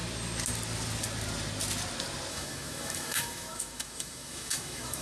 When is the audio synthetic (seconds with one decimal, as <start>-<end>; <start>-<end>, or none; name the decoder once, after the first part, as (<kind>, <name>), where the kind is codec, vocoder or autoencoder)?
2.3-5.0 (autoencoder, DAC-VAE)